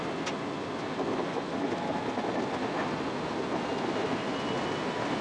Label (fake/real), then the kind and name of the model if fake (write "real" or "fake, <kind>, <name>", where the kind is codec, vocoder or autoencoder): real